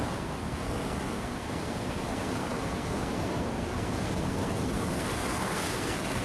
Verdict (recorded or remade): remade